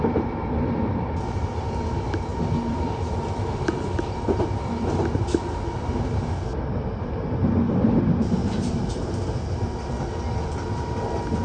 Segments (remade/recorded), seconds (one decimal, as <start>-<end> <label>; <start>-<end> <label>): 0.0-8.4 recorded; 8.4-8.9 remade; 8.9-11.4 recorded